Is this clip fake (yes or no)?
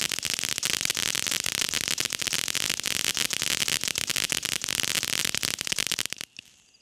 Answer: no